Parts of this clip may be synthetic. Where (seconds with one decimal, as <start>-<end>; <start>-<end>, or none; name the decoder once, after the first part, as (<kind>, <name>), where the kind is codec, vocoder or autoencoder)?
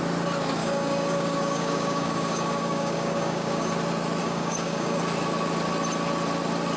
0.6-3.7 (codec, DAC); 4.2-5.0